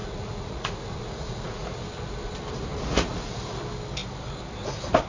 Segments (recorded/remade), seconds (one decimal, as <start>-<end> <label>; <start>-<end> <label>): 0.0-1.8 remade; 1.8-2.7 recorded; 2.7-3.3 remade; 3.3-5.1 recorded